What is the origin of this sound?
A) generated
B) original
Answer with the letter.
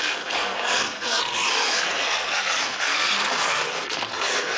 A